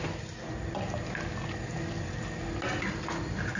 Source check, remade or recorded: recorded